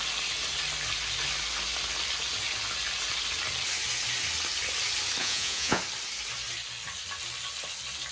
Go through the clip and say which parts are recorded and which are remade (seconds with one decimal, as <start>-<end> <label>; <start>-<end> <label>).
0.0-5.2 recorded; 5.2-5.8 remade; 5.8-8.1 recorded